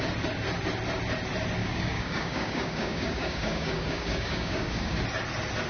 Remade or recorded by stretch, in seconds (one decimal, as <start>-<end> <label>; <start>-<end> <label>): 0.0-1.6 recorded; 1.6-5.0 remade; 5.0-5.7 recorded